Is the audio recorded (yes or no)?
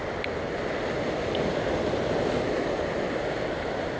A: yes